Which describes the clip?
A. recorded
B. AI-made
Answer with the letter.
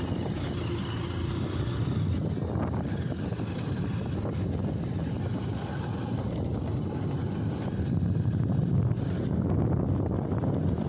A